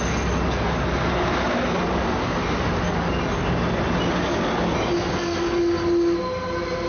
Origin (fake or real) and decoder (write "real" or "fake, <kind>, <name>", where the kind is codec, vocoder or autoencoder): real